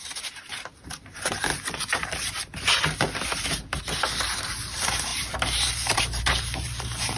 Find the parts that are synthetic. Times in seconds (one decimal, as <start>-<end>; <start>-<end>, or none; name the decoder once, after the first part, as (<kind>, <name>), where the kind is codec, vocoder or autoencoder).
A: 0.0-1.5 (vocoder, BigVGAN v2); 4.2-7.2